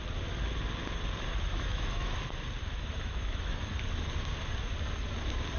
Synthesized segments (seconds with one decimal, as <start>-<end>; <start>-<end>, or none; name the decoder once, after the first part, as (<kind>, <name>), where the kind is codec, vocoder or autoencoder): 1.3-2.1 (autoencoder, DAC-VAE); 2.6-3.8